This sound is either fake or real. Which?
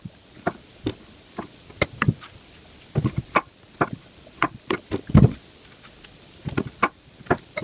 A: real